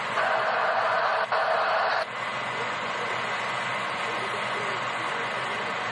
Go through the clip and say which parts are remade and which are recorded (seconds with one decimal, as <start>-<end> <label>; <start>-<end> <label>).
0.0-1.1 remade; 1.1-1.9 recorded; 1.9-5.9 remade